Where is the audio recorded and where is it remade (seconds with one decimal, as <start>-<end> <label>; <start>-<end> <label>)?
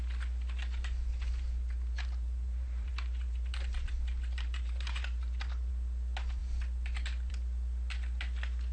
0.0-1.1 recorded; 1.1-5.7 remade; 5.7-8.7 recorded